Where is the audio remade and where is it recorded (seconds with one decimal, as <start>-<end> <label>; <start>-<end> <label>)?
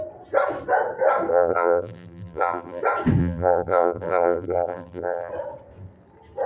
0.0-1.3 recorded; 1.3-2.8 remade; 2.8-3.2 recorded; 3.2-5.3 remade; 5.3-6.5 recorded